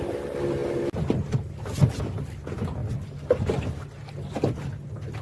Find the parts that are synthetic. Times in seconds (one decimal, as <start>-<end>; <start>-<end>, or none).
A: none